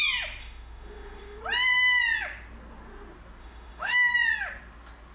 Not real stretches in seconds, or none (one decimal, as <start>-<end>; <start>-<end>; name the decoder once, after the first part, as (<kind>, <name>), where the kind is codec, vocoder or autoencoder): 0.4-1.4 (autoencoder, DAC-VAE); 3.4-4.1